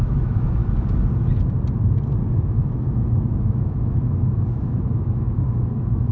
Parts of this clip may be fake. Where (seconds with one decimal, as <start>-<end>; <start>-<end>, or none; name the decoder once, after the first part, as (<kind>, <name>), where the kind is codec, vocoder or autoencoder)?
0.0-0.6 (autoencoder, DAC-VAE); 2.3-6.1